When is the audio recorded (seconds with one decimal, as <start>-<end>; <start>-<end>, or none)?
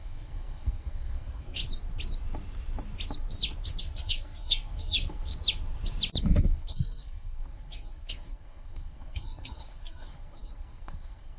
1.6-3.8; 5.3-6.2